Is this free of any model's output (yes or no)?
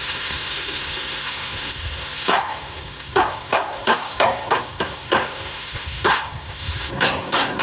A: no